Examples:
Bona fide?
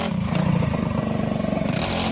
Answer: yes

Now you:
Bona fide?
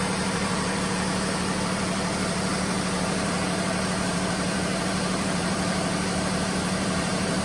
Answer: no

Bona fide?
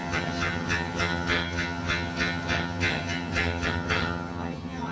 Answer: no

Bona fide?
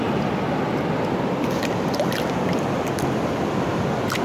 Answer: yes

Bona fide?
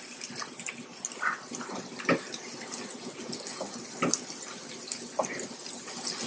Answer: yes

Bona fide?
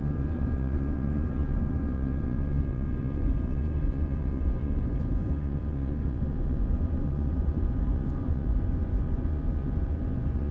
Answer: no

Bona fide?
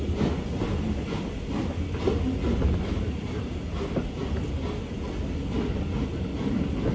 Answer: yes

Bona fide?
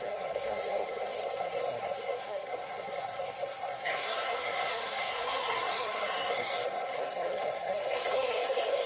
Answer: no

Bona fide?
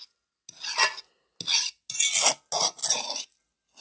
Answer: yes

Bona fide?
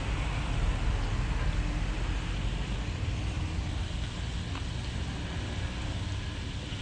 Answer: yes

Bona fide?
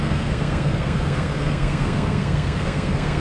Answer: no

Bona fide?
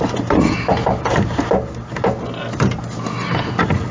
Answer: yes